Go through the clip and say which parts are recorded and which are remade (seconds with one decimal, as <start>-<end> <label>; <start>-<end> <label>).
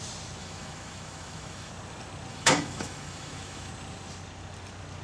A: 0.0-0.4 recorded; 0.4-1.7 remade; 1.7-2.3 recorded; 2.3-3.7 remade; 3.7-5.0 recorded